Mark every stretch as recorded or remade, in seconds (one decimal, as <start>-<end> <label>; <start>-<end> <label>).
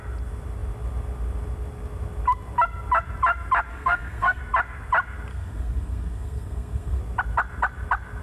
0.0-3.7 recorded; 3.7-4.4 remade; 4.4-5.3 recorded; 5.3-7.0 remade; 7.0-8.2 recorded